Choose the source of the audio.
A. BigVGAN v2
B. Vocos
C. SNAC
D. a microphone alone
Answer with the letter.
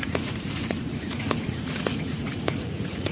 B